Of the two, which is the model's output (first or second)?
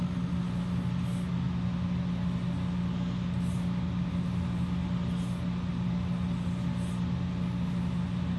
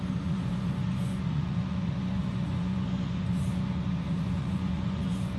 second